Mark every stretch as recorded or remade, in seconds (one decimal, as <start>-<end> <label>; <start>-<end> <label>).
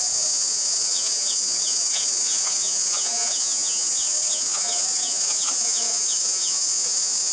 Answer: 0.0-7.3 remade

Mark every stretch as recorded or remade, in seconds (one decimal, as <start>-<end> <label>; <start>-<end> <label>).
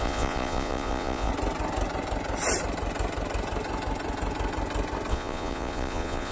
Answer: 0.0-1.3 remade; 1.3-5.1 recorded; 5.1-6.3 remade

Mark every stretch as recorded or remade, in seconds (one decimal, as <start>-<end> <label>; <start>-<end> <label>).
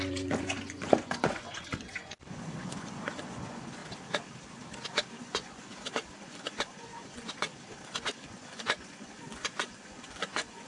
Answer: 0.0-3.8 remade; 3.8-5.2 recorded; 5.2-5.7 remade; 5.7-6.2 recorded; 6.2-7.5 remade; 7.5-8.2 recorded; 8.2-10.7 remade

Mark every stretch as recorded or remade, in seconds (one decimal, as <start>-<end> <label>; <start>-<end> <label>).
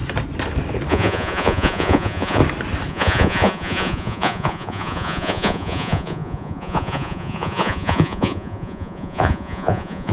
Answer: 0.0-0.9 recorded; 0.9-2.4 remade; 2.4-2.9 recorded; 2.9-10.1 remade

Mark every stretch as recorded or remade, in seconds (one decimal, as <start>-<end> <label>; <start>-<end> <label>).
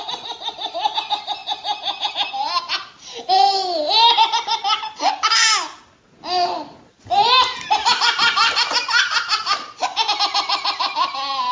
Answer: 0.0-11.5 recorded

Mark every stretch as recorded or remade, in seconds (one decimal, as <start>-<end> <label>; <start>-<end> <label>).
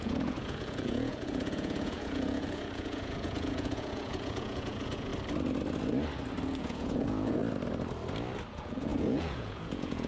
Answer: 0.0-5.1 remade; 5.1-6.6 recorded; 6.6-7.4 remade; 7.4-8.5 recorded; 8.5-10.1 remade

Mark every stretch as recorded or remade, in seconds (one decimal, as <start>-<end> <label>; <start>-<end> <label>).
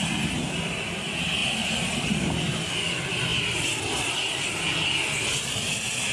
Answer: 0.0-6.1 recorded